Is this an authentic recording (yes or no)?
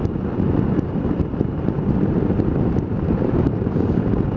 no